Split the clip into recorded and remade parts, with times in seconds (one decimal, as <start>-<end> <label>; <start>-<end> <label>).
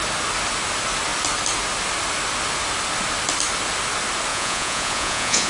0.0-4.3 recorded; 4.3-5.5 remade